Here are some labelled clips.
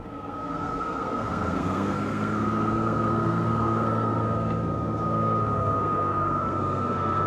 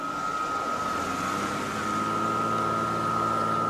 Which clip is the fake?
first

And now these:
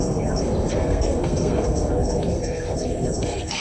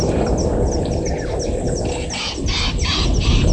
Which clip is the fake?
first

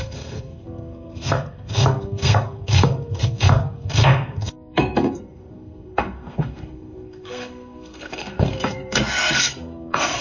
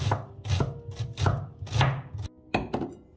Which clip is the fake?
first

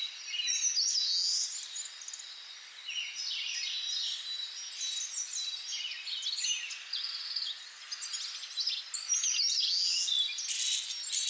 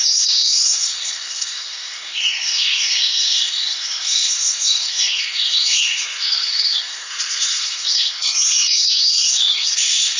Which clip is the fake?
second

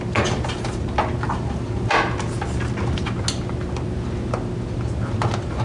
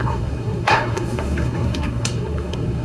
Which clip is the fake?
second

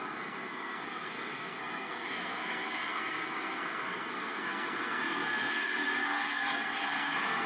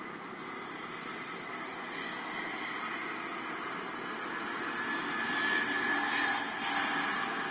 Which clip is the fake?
first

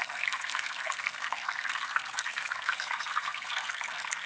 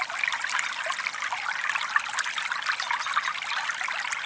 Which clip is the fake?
first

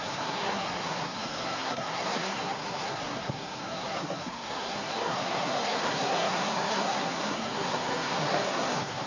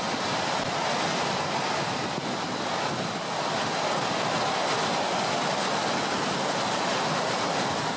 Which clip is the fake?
first